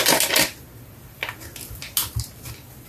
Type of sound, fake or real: real